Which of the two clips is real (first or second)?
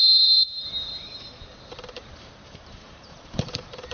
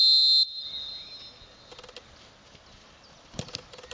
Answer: second